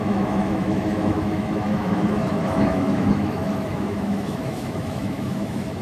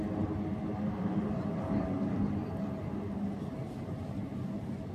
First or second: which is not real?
first